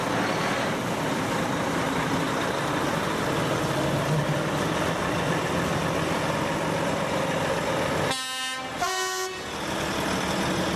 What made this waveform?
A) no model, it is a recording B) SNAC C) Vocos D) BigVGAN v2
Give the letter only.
A